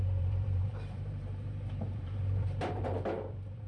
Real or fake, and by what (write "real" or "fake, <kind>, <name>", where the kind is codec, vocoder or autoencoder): fake, vocoder, BigVGAN v2